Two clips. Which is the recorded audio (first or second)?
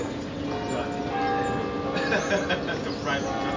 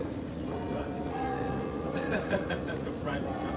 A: first